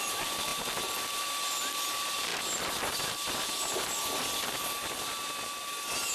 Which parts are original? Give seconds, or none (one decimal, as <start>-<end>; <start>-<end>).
0.0-6.1